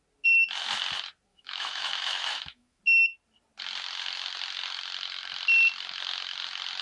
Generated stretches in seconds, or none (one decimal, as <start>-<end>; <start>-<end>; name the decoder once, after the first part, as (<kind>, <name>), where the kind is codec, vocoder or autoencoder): 1.3-2.8 (autoencoder, DAC-VAE)